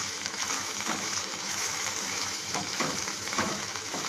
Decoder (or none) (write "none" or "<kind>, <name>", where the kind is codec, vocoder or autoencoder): autoencoder, DAC-VAE